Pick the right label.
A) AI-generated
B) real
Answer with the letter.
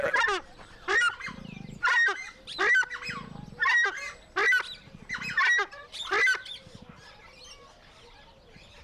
B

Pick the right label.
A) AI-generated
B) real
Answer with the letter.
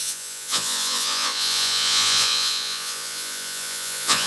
A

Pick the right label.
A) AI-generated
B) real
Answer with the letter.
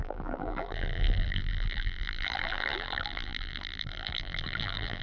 A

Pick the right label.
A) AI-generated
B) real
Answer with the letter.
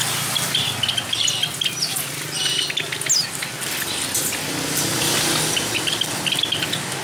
B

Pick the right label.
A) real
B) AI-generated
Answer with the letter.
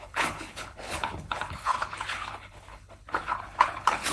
B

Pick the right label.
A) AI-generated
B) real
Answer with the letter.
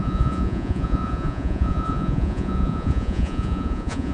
A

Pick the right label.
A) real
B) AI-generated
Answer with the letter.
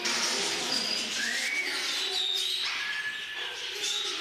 A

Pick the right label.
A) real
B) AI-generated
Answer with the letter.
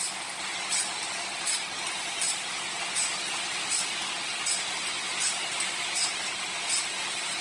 A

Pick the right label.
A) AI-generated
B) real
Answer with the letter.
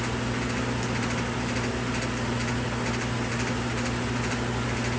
B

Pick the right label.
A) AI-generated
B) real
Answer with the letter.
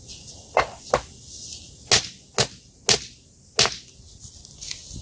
B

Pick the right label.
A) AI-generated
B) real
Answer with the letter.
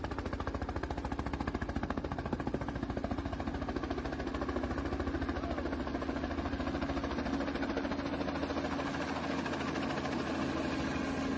B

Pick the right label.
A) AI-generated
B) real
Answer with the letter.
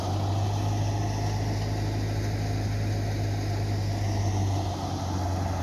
B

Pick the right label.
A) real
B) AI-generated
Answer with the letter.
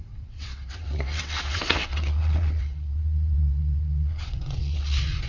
B